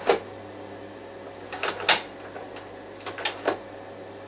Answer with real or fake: real